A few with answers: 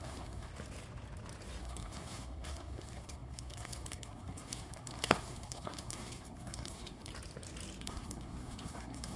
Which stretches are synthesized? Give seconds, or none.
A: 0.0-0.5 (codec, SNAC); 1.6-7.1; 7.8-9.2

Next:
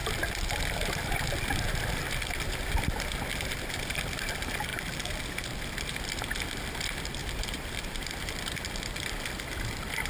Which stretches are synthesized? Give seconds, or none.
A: 0.0-3.8 (vocoder, BigVGAN v2); 7.2-8.6

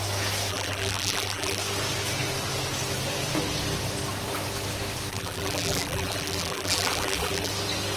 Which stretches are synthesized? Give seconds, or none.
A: 0.5-1.6 (vocoder, BigVGAN v2); 5.1-7.5

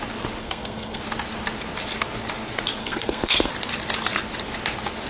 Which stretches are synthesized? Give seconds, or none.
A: 0.4-1.0 (codec, SNAC); 2.8-3.5